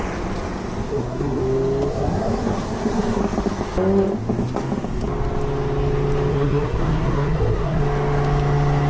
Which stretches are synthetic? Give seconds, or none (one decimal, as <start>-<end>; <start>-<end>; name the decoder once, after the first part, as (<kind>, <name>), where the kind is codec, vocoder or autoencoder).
0.8-1.4 (codec, SNAC); 1.9-3.2; 6.3-7.8